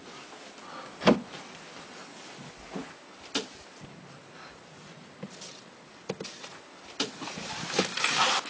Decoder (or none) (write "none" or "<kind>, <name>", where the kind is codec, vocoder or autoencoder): none